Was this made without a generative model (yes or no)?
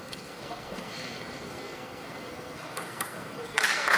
no